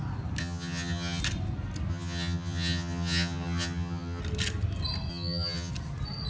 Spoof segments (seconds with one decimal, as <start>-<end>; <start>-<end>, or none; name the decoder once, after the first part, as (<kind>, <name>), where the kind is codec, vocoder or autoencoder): 0.4-1.2 (vocoder, HiFi-GAN); 1.9-4.2; 5.1-5.7